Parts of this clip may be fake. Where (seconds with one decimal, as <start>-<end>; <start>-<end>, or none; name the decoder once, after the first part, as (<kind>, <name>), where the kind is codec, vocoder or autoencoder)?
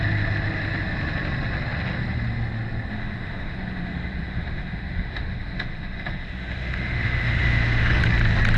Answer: 2.9-8.0 (autoencoder, DAC-VAE)